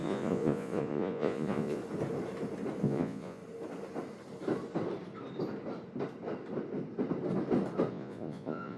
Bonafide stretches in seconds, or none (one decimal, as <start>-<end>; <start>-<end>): 1.8-2.8; 3.4-7.9